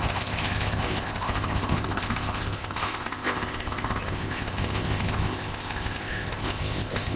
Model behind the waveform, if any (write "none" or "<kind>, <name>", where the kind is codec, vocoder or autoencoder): codec, ZipCodec